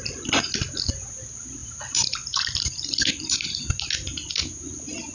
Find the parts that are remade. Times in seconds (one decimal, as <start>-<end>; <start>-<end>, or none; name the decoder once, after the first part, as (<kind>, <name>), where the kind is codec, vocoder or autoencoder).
none

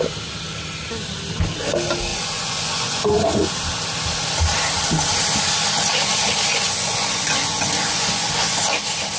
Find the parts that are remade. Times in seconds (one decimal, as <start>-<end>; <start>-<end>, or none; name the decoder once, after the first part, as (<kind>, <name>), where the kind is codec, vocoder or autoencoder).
2.1-3.0 (vocoder, Vocos); 6.5-8.6

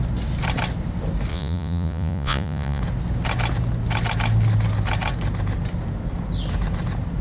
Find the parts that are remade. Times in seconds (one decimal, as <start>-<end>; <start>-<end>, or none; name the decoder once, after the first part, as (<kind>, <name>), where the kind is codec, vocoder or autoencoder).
1.3-2.8 (vocoder, Vocos)

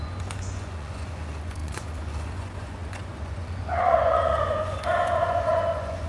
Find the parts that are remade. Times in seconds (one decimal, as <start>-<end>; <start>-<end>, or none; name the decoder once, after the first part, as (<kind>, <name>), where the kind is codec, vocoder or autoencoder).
0.0-6.1 (vocoder, Vocos)